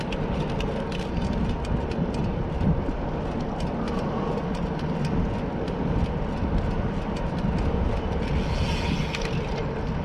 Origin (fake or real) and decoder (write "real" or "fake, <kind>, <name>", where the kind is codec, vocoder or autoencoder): real